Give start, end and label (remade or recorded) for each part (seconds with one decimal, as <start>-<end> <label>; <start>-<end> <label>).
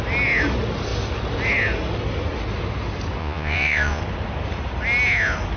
0.0-3.2 recorded; 3.2-4.0 remade; 4.0-5.6 recorded